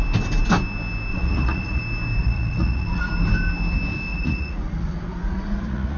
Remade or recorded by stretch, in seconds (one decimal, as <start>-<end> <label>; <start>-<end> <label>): 0.0-1.1 recorded; 1.1-1.8 remade; 1.8-2.2 recorded; 2.2-3.1 remade; 3.1-4.1 recorded; 4.1-6.0 remade